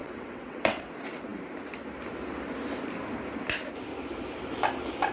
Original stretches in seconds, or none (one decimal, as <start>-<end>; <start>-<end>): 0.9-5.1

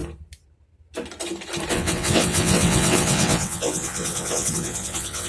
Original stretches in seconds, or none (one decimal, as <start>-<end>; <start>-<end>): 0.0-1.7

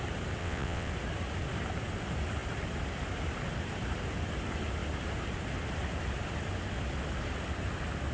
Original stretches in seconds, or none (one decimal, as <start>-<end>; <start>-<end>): 0.0-0.4; 0.9-8.1

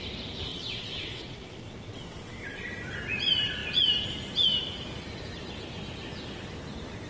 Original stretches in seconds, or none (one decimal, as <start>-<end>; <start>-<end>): 0.0-0.5; 2.7-7.1